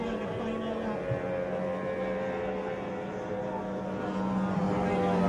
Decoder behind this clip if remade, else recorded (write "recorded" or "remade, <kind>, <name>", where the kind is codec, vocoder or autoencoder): recorded